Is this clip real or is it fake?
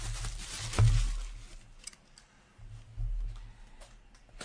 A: real